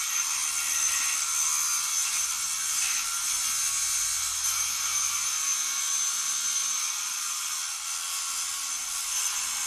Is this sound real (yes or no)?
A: yes